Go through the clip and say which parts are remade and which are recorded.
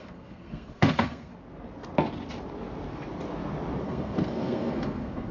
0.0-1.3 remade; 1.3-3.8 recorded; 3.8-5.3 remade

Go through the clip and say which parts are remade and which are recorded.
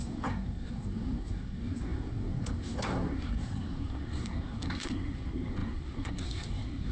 0.0-6.9 remade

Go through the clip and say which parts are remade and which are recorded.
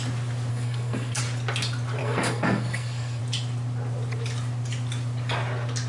0.0-0.5 recorded; 0.5-1.2 remade; 1.2-2.0 recorded; 2.0-3.2 remade; 3.2-5.9 recorded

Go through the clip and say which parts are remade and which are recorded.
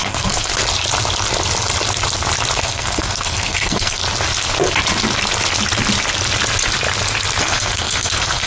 0.0-0.5 remade; 0.5-2.6 recorded; 2.6-4.0 remade; 4.0-7.4 recorded; 7.4-8.5 remade